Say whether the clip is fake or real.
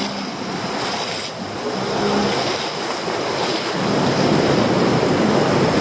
real